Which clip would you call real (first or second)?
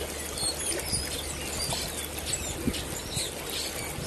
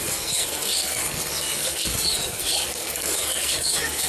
first